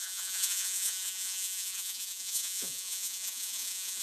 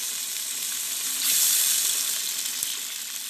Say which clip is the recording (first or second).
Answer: second